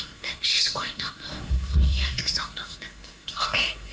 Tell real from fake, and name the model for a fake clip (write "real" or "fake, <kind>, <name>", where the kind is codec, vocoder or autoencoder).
fake, codec, SNAC